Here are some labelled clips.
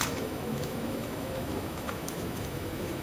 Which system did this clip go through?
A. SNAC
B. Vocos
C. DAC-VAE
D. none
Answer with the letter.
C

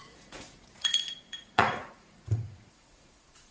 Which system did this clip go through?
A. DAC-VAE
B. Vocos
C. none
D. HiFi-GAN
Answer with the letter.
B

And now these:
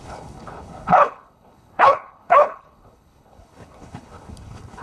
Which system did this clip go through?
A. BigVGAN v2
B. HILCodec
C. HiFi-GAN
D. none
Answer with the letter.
B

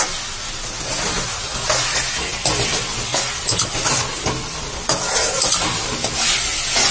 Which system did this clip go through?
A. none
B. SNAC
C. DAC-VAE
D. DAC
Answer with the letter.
A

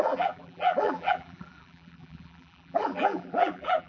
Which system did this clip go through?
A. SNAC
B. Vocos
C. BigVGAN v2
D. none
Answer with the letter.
C